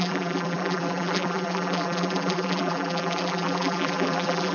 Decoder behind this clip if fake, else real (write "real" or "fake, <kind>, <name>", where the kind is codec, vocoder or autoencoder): fake, vocoder, BigVGAN v2